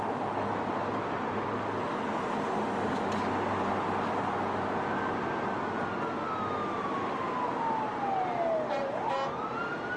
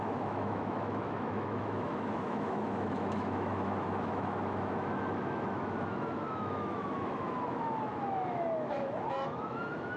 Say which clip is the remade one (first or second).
second